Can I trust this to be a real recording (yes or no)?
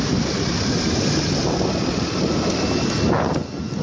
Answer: yes